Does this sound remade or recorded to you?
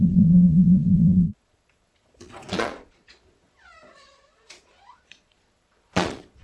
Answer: remade